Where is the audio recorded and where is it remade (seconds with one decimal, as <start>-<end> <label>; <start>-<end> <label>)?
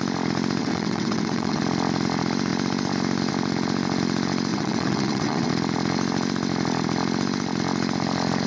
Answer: 0.0-0.6 recorded; 0.6-1.6 remade; 1.6-4.5 recorded; 4.5-5.5 remade; 5.5-8.5 recorded